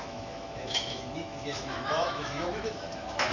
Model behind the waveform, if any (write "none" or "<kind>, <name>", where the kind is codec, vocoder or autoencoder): autoencoder, DAC-VAE